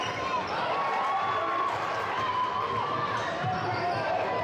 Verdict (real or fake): real